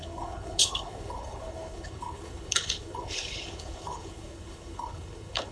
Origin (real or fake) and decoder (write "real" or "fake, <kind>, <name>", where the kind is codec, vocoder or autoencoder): fake, codec, HILCodec